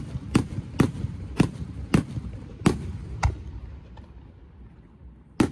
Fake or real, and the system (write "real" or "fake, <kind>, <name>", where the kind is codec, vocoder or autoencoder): real